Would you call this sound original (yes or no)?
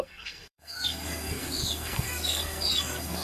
no